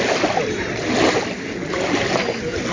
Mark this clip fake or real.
real